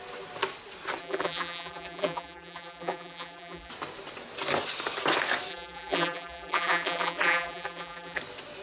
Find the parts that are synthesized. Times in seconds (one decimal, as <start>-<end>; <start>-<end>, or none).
1.0-3.7; 5.5-8.2